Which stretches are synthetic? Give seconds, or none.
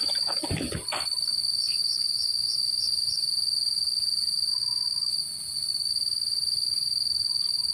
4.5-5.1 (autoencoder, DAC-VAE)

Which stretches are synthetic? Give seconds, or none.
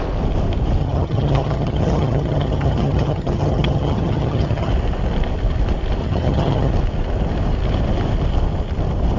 0.8-4.7 (vocoder, HiFi-GAN); 6.0-6.7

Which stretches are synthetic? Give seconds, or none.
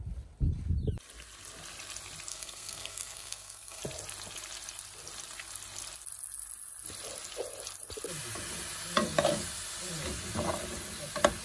2.3-3.8 (codec, SNAC)